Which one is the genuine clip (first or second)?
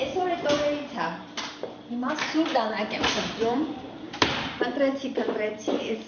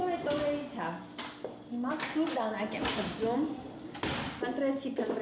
second